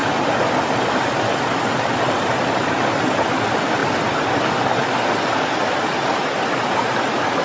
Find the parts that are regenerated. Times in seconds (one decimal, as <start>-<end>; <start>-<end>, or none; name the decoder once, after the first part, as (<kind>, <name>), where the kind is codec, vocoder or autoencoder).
6.2-7.4 (vocoder, BigVGAN v2)